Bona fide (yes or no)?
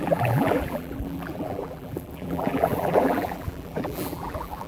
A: no